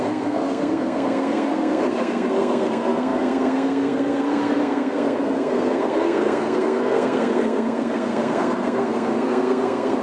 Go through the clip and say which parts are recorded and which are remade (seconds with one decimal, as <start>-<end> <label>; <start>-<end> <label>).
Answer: 0.0-10.0 remade